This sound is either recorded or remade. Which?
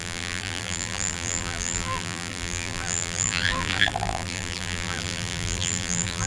remade